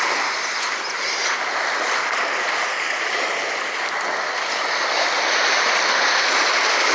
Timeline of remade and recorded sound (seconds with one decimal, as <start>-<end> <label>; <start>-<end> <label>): 0.0-6.9 recorded